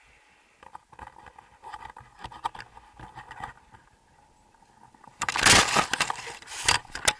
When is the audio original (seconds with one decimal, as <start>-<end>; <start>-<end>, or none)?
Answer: 0.0-7.2